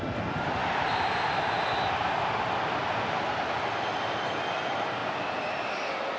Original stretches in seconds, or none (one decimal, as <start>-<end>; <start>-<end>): 0.0-5.0